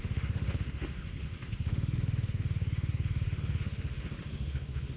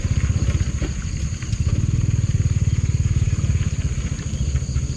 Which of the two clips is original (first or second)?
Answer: second